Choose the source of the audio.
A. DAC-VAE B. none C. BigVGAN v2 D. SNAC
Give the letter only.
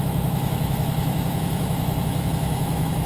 A